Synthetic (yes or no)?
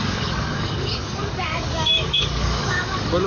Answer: yes